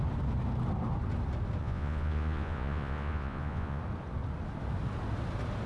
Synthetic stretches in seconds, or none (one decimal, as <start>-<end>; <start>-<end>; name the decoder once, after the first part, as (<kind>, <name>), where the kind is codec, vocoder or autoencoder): 1.6-3.8 (vocoder, Vocos)